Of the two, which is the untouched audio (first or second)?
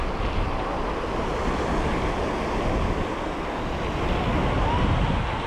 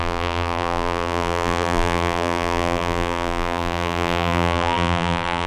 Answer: first